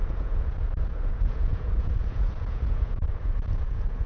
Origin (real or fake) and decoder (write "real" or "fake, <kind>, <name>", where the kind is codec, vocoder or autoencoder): fake, vocoder, Vocos